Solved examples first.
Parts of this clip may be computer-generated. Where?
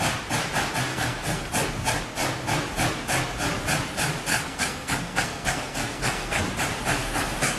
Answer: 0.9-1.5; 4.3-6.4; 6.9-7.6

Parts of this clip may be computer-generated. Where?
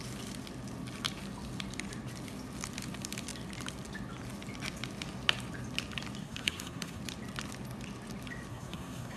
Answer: 6.2-7.0; 8.5-9.2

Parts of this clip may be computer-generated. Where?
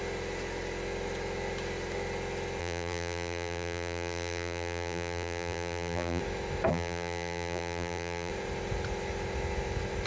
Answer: 2.6-6.2; 6.7-8.3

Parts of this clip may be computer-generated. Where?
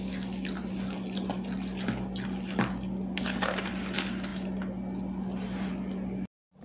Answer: none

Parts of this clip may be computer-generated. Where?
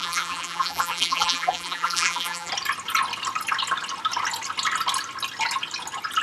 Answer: 0.0-2.5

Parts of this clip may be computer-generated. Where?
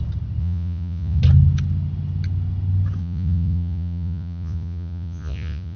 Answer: 0.4-1.2; 3.0-5.8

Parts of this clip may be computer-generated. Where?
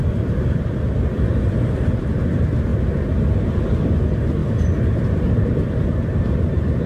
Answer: 0.0-2.7; 4.0-6.9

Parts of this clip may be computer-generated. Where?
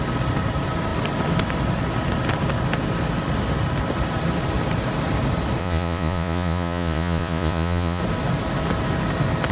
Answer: 5.6-8.0